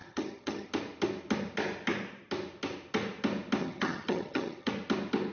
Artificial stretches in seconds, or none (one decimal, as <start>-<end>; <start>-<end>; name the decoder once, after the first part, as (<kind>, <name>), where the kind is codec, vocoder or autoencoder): 0.0-0.7 (vocoder, HiFi-GAN); 3.6-4.7